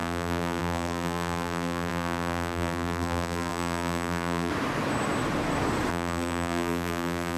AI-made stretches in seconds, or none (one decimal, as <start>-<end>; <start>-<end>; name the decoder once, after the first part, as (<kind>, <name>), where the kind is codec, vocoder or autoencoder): 0.0-4.5 (vocoder, BigVGAN v2); 5.9-7.4